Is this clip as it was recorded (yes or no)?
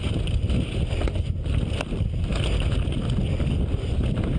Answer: yes